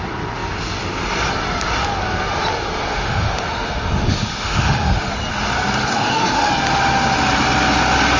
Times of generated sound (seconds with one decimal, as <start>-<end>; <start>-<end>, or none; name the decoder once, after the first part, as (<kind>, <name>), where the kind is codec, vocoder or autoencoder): 2.8-5.1 (autoencoder, DAC-VAE); 5.9-6.5